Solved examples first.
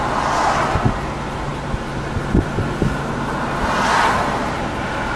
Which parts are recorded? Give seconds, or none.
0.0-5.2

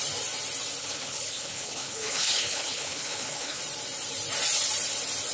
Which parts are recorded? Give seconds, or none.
0.0-0.8; 3.6-5.3

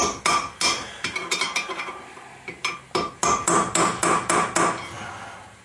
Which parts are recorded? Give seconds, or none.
0.0-5.6